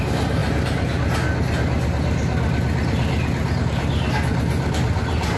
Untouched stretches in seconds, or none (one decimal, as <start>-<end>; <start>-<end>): 0.0-5.4